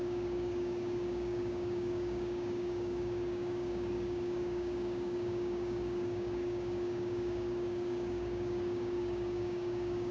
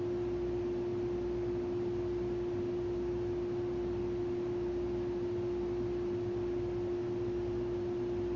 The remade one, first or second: first